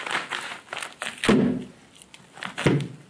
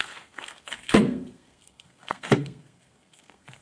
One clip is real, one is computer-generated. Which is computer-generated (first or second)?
second